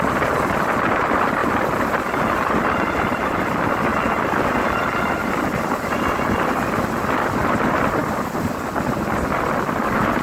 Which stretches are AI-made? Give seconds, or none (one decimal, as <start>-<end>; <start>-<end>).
none